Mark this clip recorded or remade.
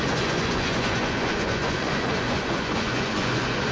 remade